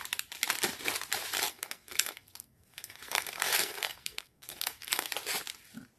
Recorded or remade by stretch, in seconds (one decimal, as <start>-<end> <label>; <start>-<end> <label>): 0.0-1.5 recorded; 1.5-5.1 remade; 5.1-6.0 recorded